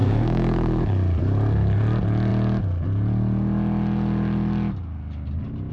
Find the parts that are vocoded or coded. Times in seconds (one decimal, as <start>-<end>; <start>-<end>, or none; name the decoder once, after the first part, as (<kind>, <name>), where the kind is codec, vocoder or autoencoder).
0.0-0.8 (codec, SNAC)